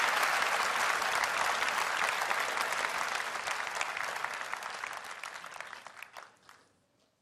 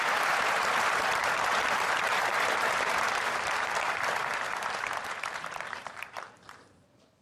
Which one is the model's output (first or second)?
second